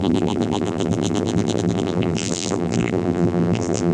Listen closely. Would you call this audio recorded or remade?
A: remade